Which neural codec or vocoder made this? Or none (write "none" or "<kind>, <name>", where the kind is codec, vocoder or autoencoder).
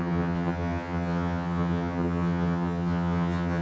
vocoder, HiFi-GAN